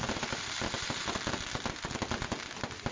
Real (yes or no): yes